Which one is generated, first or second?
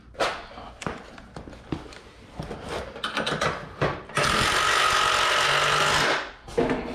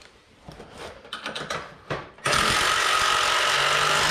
second